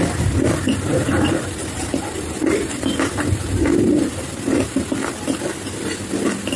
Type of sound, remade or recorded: recorded